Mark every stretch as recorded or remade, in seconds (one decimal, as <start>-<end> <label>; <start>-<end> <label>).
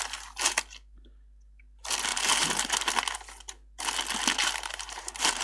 0.0-2.1 recorded; 2.1-2.7 remade; 2.7-4.4 recorded; 4.4-5.4 remade